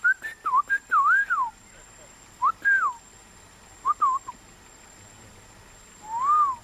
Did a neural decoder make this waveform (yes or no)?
no